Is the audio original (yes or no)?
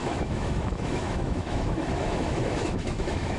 no